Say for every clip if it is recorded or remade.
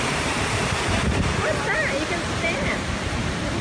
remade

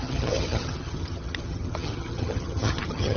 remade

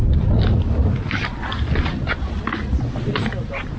recorded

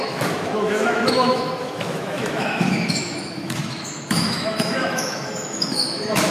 remade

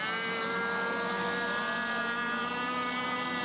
recorded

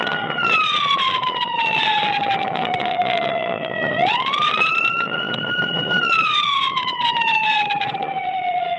remade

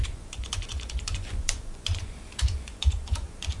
remade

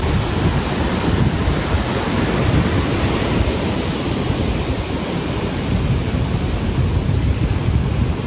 remade